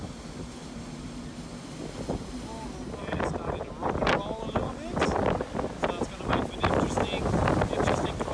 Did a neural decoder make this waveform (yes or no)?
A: no